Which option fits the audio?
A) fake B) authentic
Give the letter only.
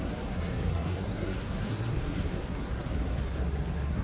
A